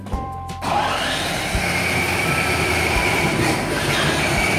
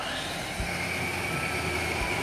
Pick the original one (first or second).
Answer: second